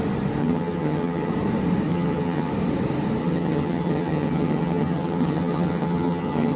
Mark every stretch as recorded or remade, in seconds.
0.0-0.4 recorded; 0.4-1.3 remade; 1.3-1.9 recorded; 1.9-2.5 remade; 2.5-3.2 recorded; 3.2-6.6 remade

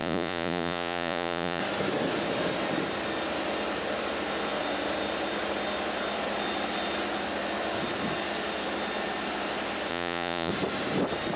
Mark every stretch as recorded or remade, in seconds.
0.0-1.6 remade; 1.6-9.9 recorded; 9.9-10.5 remade; 10.5-11.4 recorded

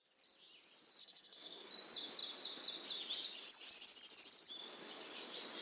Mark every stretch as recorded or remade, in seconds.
0.0-1.0 recorded; 1.0-1.7 remade; 1.7-5.6 recorded

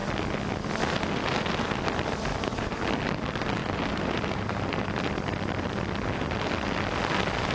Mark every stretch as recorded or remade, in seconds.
0.0-2.3 recorded; 2.3-2.8 remade; 2.8-3.6 recorded; 3.6-5.0 remade; 5.0-7.5 recorded

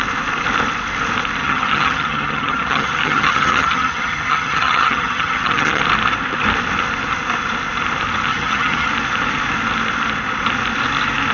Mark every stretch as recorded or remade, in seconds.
0.0-1.4 recorded; 1.4-5.8 remade; 5.8-8.3 recorded; 8.3-8.9 remade; 8.9-11.3 recorded

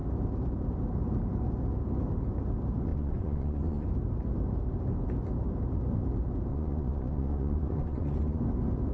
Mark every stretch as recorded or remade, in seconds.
0.0-2.9 recorded; 2.9-3.9 remade; 3.9-6.5 recorded; 6.5-8.4 remade; 8.4-8.9 recorded